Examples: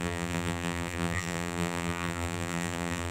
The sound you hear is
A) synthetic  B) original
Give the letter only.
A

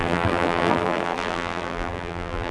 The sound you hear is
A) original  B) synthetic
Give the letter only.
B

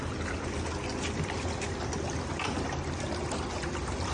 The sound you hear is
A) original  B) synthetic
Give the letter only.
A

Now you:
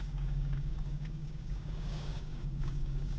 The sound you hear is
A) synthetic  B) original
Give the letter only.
A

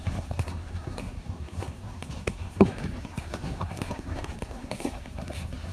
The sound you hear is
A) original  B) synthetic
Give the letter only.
B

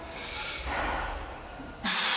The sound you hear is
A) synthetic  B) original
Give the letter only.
B